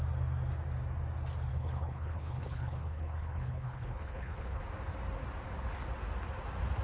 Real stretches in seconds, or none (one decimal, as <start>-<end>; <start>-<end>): 0.0-1.5; 4.6-6.8